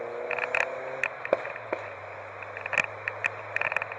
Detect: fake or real real